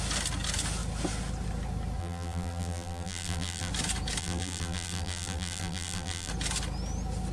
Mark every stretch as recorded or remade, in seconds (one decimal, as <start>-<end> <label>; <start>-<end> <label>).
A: 0.0-2.0 recorded; 2.0-3.7 remade; 3.7-4.2 recorded; 4.2-6.3 remade; 6.3-7.3 recorded

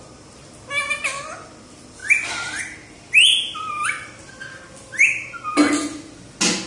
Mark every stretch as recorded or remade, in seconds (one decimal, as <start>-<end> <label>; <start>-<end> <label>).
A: 0.0-6.7 recorded

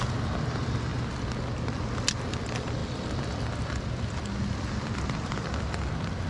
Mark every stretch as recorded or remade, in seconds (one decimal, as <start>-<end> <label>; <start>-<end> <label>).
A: 0.0-0.9 remade; 0.9-2.3 recorded; 2.3-6.3 remade

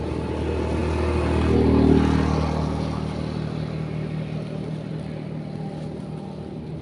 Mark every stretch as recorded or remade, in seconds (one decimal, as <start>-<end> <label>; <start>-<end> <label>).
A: 0.0-6.8 recorded